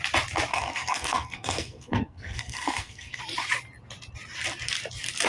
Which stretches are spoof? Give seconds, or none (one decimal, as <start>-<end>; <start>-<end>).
0.5-3.2

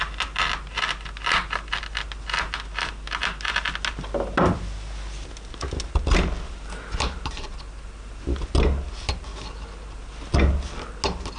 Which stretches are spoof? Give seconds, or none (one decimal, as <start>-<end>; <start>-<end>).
none

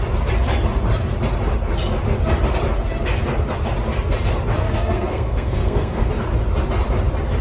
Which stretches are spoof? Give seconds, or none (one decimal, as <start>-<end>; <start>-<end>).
4.6-6.1

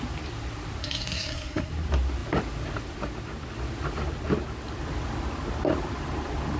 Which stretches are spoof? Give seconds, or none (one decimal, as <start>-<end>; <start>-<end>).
0.8-1.7

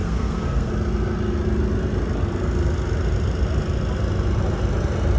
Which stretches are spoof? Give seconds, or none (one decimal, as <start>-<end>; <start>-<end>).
0.0-0.7